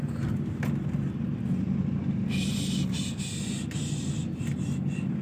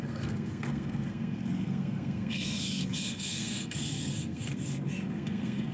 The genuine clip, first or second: first